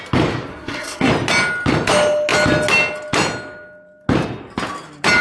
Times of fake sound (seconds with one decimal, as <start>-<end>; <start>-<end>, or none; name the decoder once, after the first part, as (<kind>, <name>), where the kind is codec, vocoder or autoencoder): 0.5-1.1 (codec, SNAC)